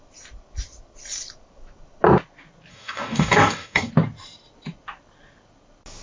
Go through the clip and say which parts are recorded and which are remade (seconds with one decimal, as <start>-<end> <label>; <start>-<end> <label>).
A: 0.0-2.7 recorded; 2.7-3.9 remade; 3.9-6.0 recorded